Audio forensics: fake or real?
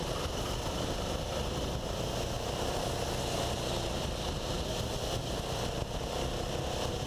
real